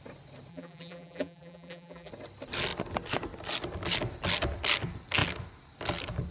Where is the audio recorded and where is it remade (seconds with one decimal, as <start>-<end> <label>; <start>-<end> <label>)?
0.0-0.5 recorded; 0.5-2.1 remade; 2.1-6.3 recorded